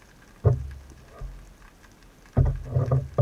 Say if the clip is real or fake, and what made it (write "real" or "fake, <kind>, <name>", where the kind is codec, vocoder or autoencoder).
real